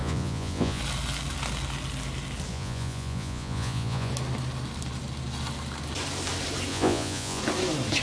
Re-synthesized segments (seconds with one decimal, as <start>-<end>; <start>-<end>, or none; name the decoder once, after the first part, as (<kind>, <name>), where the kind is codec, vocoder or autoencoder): 0.0-0.8 (vocoder, Vocos); 2.5-4.1; 6.7-7.4